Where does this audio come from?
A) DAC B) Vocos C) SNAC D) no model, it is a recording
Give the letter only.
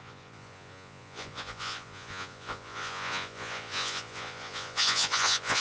B